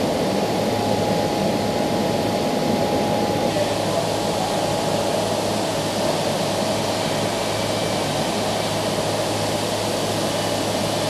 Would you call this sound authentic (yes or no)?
yes